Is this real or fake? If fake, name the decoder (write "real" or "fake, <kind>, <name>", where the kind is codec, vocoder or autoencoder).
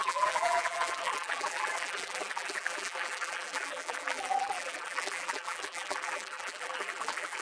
fake, vocoder, BigVGAN v2